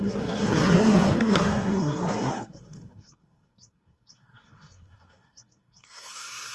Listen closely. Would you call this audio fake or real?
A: fake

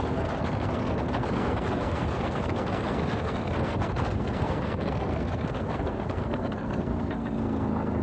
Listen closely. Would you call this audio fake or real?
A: fake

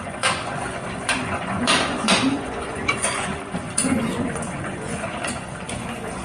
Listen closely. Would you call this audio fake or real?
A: fake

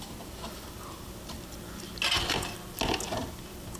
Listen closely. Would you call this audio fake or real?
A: real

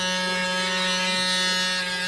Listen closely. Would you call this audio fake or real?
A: real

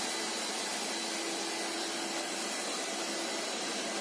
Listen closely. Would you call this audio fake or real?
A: real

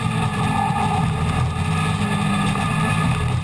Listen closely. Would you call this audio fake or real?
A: real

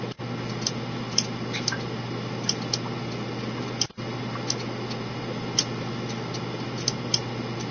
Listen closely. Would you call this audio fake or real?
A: real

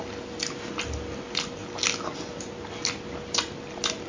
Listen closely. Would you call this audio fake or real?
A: real